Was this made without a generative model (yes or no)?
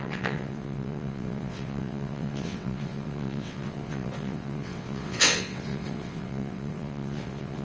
no